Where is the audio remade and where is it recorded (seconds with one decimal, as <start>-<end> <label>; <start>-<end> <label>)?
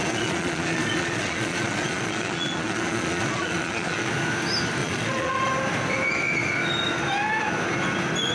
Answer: 0.0-4.1 remade; 4.1-4.8 recorded; 4.8-5.5 remade; 5.5-8.3 recorded